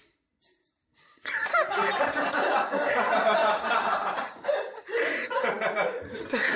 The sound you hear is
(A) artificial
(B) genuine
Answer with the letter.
A